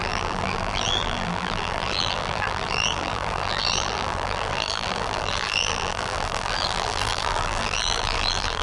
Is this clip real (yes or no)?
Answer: no